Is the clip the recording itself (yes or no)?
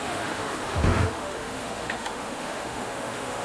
no